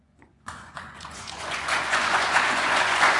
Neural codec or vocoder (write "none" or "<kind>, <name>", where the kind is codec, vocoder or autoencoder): vocoder, Vocos